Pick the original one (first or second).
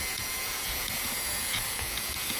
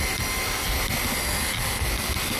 second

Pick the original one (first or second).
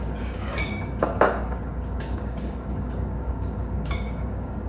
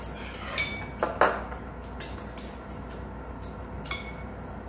second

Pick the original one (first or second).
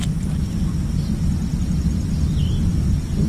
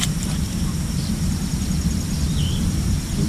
first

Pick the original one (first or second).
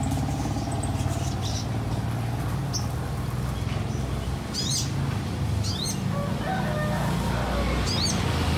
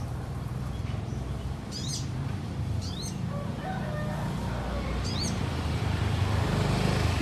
first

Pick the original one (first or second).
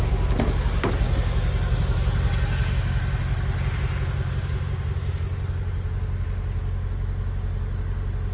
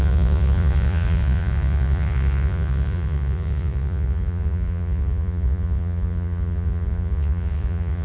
first